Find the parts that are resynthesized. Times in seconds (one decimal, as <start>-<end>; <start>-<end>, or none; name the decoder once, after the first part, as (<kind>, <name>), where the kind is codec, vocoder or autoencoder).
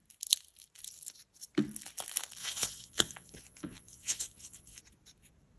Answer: 2.4-4.8 (vocoder, Vocos)